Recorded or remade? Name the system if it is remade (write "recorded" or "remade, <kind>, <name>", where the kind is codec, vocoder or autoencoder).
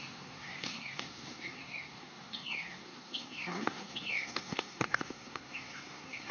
remade, codec, SNAC